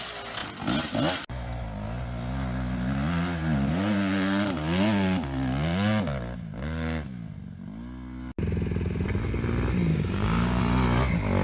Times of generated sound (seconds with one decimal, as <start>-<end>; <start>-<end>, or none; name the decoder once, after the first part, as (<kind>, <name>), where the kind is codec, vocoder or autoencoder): 9.9-10.6 (codec, DAC)